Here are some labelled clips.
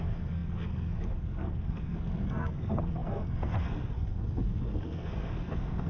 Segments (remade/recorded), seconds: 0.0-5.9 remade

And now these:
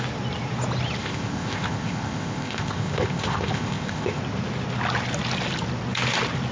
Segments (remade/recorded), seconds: 0.0-1.0 recorded; 1.0-4.2 remade; 4.2-6.5 recorded

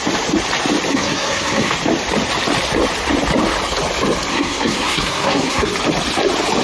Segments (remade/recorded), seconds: 0.0-0.9 recorded; 0.9-1.7 remade; 1.7-4.3 recorded; 4.3-5.7 remade; 5.7-6.6 recorded

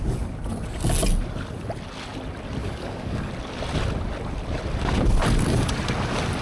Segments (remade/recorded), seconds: 0.0-2.6 recorded; 2.6-3.3 remade; 3.3-6.4 recorded

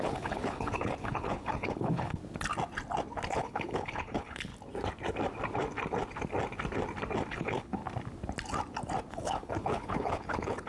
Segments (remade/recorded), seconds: 0.0-2.2 remade; 2.2-3.3 recorded; 3.3-4.5 remade; 4.5-7.3 recorded; 7.3-7.8 remade; 7.8-9.1 recorded; 9.1-10.7 remade

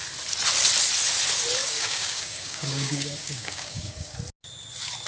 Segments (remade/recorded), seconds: 0.0-1.6 recorded; 1.6-4.1 remade; 4.1-5.1 recorded

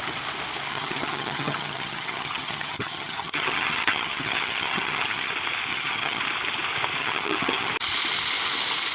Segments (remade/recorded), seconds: 0.0-0.7 recorded; 0.7-5.3 remade; 5.3-5.7 recorded; 5.7-6.2 remade; 6.2-7.0 recorded; 7.0-7.7 remade; 7.7-8.9 recorded